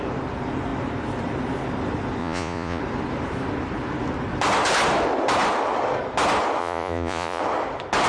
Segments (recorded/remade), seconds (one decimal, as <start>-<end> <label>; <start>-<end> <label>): 0.0-2.2 recorded; 2.2-2.8 remade; 2.8-6.6 recorded; 6.6-7.4 remade; 7.4-8.1 recorded